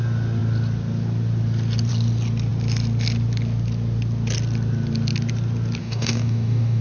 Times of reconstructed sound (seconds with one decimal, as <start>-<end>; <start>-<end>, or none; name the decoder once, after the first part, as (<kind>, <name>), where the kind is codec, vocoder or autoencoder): 5.8-6.8 (codec, DAC)